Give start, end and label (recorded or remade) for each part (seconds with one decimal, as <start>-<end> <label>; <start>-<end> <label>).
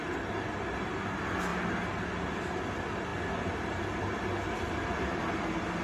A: 0.0-5.8 recorded